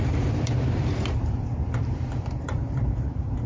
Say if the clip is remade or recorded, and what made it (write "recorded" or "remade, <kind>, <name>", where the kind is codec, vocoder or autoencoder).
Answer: remade, vocoder, BigVGAN v2